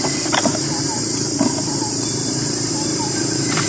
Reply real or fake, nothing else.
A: fake